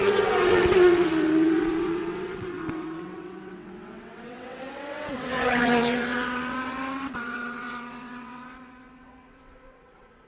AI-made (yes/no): yes